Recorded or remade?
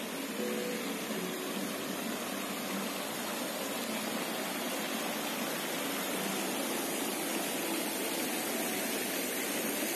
recorded